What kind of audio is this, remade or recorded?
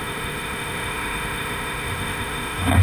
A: remade